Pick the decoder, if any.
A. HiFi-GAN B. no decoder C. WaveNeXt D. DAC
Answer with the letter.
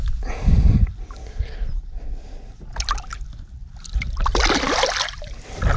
B